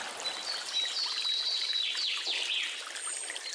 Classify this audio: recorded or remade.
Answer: recorded